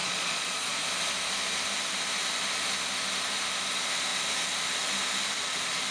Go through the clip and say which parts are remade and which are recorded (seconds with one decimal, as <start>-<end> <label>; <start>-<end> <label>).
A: 0.0-0.8 remade; 0.8-5.9 recorded